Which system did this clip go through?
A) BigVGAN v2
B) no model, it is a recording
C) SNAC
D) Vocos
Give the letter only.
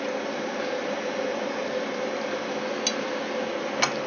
B